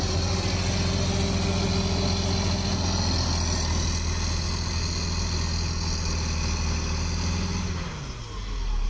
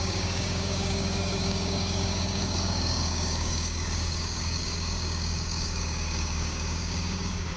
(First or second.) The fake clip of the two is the second